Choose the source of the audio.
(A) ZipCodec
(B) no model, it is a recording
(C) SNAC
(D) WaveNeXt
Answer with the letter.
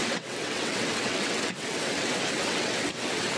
D